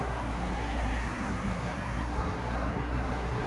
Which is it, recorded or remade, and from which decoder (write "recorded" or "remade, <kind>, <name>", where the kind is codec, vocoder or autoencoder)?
remade, codec, SNAC